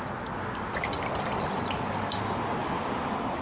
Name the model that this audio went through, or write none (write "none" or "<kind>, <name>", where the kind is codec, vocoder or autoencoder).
none